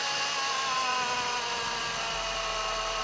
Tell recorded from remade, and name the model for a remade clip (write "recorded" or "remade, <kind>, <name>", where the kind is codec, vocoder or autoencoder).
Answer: recorded